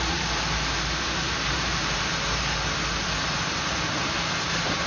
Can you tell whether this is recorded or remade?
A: remade